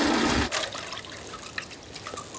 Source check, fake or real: real